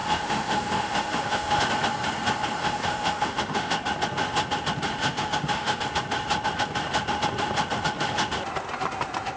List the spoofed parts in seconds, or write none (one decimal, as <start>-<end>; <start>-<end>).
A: 0.0-1.6; 2.6-3.7; 5.0-5.8